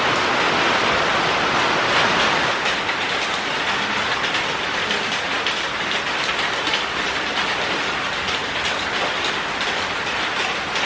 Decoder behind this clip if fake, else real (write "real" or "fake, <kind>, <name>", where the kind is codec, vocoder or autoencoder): real